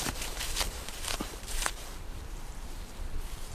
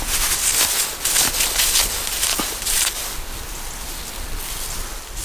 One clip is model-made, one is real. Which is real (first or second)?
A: second